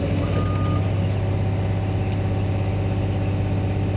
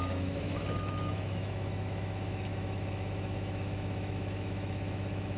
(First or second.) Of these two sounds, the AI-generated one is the second